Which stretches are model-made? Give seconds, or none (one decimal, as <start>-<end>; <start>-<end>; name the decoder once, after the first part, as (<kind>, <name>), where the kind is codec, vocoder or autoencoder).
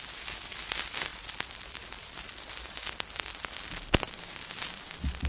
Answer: none